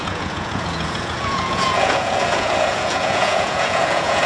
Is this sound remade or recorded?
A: remade